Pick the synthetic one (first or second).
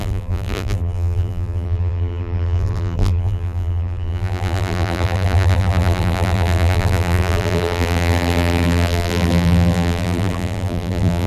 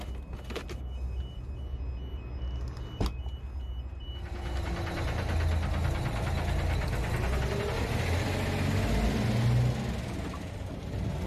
first